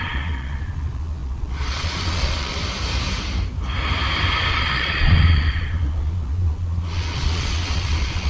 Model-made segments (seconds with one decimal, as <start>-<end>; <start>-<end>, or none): 0.0-2.6; 4.5-8.3

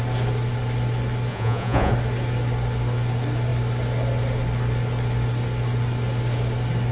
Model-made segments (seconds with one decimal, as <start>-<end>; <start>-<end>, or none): 1.3-1.9